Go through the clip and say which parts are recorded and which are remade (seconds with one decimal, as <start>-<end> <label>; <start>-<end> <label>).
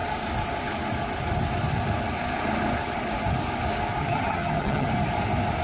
0.0-4.0 recorded; 4.0-4.9 remade; 4.9-5.6 recorded